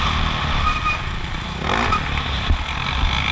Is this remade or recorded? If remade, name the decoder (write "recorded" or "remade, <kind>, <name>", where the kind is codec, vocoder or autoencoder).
recorded